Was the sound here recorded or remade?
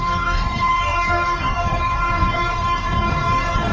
remade